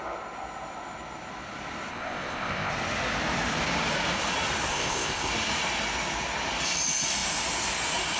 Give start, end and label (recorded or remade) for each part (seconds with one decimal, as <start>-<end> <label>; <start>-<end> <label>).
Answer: 0.0-1.9 recorded; 1.9-2.7 remade; 2.7-4.7 recorded; 4.7-5.3 remade; 5.3-8.2 recorded